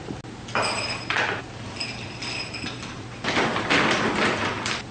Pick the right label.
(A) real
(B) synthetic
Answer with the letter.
A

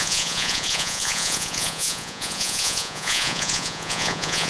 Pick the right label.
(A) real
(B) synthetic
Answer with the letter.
B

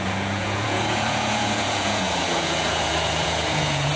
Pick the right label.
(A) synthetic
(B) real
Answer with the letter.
A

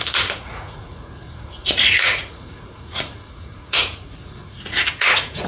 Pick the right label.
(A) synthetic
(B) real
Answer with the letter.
A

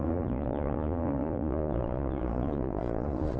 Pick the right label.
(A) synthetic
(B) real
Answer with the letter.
A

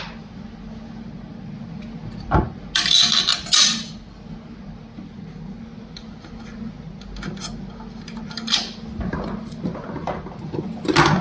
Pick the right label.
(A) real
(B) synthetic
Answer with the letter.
A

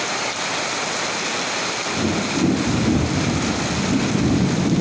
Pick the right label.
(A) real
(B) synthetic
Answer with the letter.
A